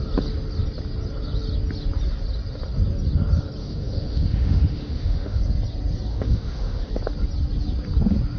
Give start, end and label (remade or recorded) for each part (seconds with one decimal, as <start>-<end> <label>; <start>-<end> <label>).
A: 0.0-3.6 recorded; 3.6-5.4 remade; 5.4-6.1 recorded; 6.1-6.9 remade; 6.9-8.4 recorded

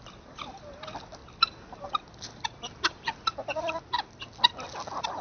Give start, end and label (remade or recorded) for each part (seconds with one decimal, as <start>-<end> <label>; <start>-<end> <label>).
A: 0.0-5.2 recorded

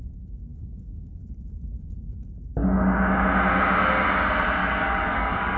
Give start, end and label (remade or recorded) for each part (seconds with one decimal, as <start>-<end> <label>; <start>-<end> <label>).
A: 0.0-0.5 recorded; 0.5-1.2 remade; 1.2-4.6 recorded; 4.6-5.6 remade

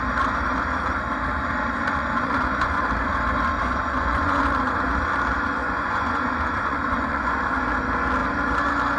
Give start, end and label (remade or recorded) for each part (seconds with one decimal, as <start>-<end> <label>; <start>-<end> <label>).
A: 0.0-1.8 recorded; 1.8-2.8 remade; 2.8-3.6 recorded; 3.6-4.4 remade; 4.4-5.6 recorded; 5.6-7.4 remade; 7.4-9.0 recorded